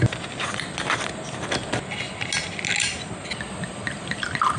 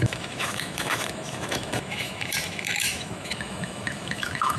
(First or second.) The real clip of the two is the first